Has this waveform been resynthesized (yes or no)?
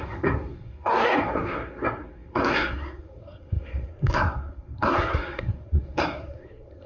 yes